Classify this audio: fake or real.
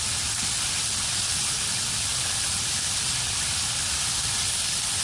real